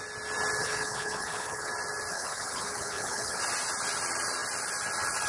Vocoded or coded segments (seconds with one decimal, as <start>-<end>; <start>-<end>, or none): 0.6-1.7; 2.1-3.4